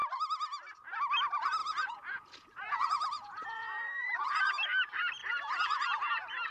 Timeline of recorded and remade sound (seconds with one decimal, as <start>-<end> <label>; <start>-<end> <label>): 0.0-1.6 recorded; 1.6-4.5 remade; 4.5-5.2 recorded; 5.2-6.1 remade; 6.1-6.5 recorded